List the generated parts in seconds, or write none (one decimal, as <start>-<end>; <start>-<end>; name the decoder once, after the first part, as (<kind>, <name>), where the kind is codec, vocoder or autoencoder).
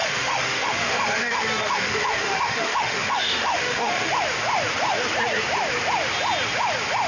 0.0-4.1 (autoencoder, DAC-VAE)